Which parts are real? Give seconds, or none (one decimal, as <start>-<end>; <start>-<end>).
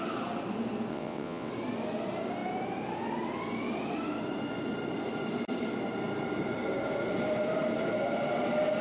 0.0-0.9; 1.5-8.8